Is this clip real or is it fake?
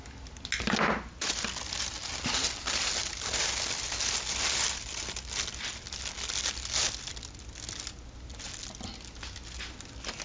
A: real